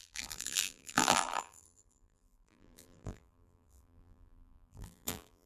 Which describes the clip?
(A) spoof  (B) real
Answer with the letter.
A